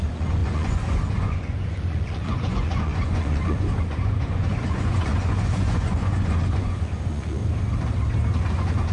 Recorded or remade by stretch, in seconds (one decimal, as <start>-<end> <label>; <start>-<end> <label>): 0.0-7.4 remade; 7.4-8.5 recorded; 8.5-8.9 remade